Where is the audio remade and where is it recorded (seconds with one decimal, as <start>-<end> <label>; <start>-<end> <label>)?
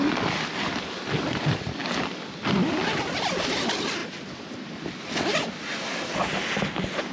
0.0-7.1 recorded